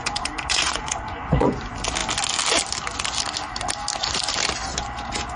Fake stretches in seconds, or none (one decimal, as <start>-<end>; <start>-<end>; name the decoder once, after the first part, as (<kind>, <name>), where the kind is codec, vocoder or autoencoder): 0.0-1.6 (vocoder, Vocos); 4.7-5.4